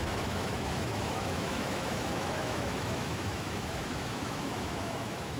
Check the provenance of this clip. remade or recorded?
remade